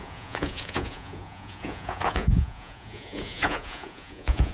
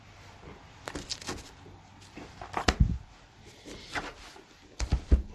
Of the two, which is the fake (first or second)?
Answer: first